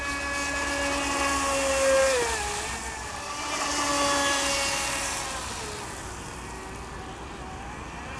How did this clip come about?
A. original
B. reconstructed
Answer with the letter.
A